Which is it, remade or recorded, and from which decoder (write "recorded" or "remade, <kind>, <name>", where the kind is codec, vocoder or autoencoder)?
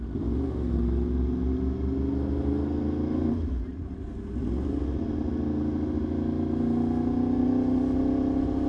recorded